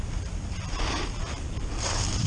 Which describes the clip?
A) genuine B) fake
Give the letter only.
B